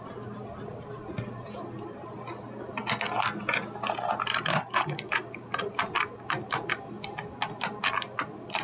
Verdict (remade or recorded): recorded